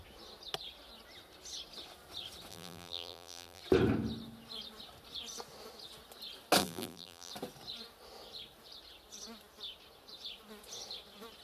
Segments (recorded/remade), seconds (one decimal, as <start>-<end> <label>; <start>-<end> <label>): 0.0-2.5 recorded; 2.5-3.6 remade; 3.6-6.6 recorded; 6.6-7.3 remade; 7.3-11.4 recorded